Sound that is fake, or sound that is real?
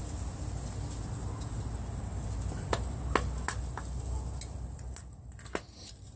real